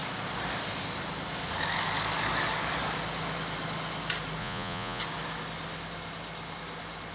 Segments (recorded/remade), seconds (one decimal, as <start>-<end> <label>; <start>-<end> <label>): 0.0-4.4 recorded; 4.4-5.0 remade; 5.0-7.1 recorded